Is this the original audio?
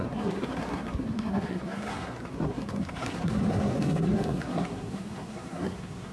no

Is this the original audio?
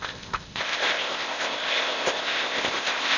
no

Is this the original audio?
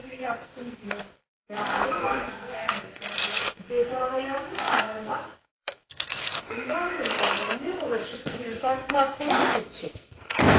no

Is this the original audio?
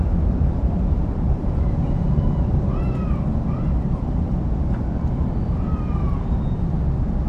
no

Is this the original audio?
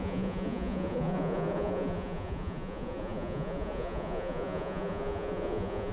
no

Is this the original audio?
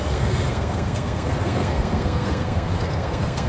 no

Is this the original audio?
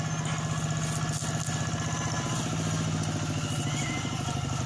yes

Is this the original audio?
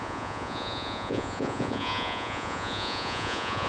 no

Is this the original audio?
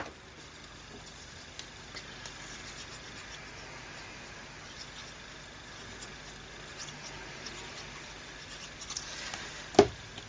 yes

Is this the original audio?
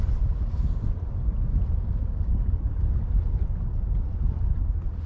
yes